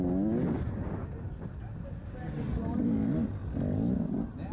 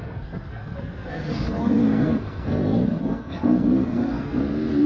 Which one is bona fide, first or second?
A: first